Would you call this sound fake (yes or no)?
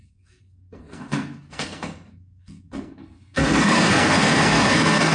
yes